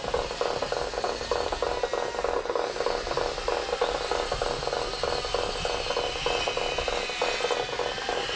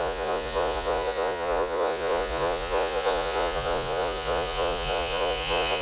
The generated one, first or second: second